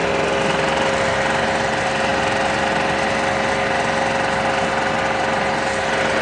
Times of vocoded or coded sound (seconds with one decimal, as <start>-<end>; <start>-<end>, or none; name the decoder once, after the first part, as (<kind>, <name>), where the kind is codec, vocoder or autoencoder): none